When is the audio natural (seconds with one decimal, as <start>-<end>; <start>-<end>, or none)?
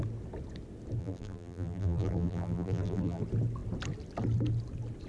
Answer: 0.0-1.0; 3.2-5.1